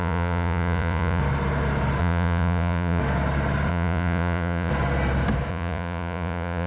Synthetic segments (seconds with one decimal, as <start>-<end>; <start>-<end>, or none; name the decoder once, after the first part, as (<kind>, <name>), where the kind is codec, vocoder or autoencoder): 0.0-1.2 (vocoder, Vocos); 2.0-3.0; 3.7-4.7; 5.5-6.7